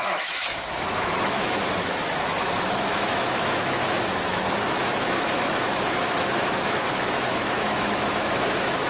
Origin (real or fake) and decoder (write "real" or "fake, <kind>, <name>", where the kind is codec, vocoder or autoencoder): fake, autoencoder, DAC-VAE